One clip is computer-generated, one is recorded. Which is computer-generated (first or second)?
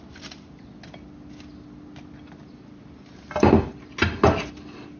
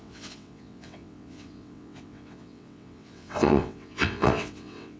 second